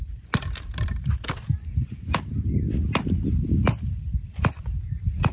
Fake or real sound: real